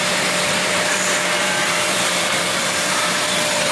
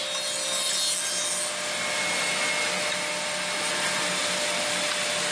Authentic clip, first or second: second